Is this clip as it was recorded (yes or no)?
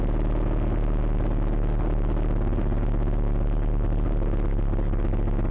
yes